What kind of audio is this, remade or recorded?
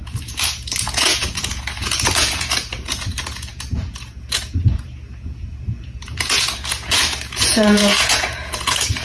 remade